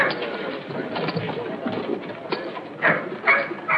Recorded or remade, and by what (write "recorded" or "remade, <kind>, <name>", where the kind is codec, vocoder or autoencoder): recorded